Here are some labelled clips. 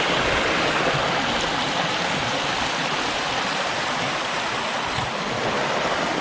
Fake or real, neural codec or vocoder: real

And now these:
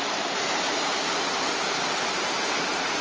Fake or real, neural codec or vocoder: real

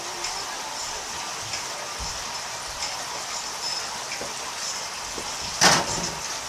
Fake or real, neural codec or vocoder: real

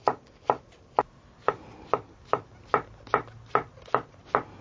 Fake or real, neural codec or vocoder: real